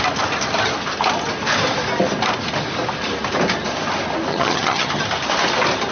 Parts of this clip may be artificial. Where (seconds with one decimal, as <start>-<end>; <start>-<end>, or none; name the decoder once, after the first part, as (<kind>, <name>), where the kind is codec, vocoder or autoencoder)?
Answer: 4.3-4.9 (vocoder, HiFi-GAN)